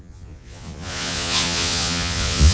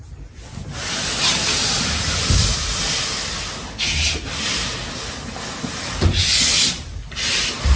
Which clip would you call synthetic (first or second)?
first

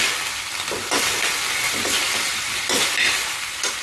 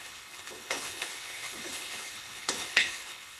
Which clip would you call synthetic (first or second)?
second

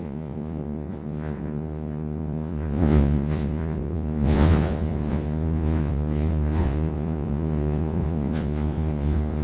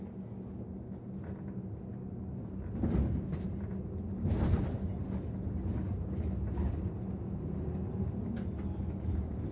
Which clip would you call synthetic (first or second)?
first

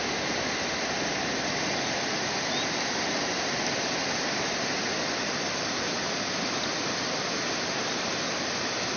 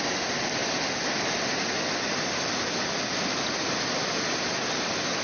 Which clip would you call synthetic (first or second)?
first